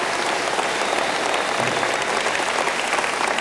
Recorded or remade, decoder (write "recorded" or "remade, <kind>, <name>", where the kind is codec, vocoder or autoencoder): remade, vocoder, BigVGAN v2